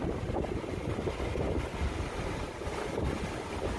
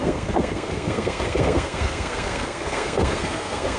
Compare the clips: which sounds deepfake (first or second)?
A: second